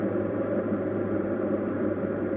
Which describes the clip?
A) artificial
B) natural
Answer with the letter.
A